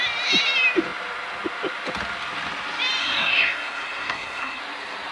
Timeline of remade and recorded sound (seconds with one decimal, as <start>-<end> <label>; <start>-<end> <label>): 0.0-3.0 recorded; 3.0-4.6 remade; 4.6-5.1 recorded